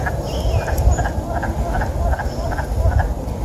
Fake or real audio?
real